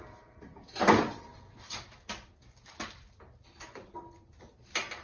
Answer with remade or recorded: recorded